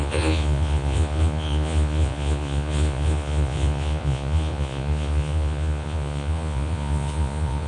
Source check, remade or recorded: remade